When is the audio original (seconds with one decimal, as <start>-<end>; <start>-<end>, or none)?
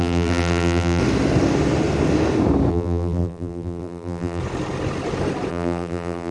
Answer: 1.0-2.7; 4.4-5.5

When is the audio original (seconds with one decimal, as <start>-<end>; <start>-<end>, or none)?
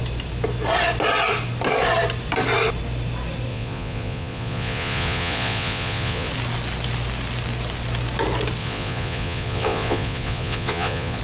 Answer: 0.0-3.5; 6.3-8.6